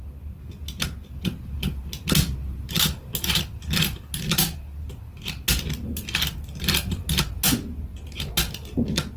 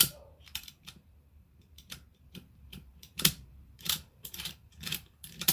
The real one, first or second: first